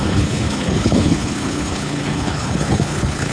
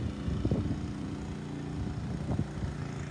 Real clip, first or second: second